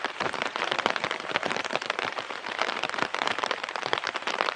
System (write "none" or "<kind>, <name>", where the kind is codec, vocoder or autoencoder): vocoder, BigVGAN v2